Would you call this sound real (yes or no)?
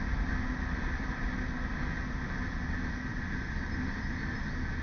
yes